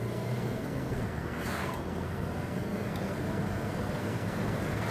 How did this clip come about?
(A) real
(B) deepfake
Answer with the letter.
B